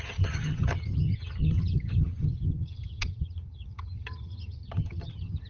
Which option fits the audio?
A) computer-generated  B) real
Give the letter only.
A